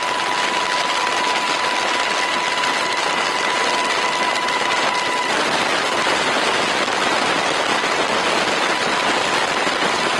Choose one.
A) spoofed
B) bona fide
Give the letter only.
B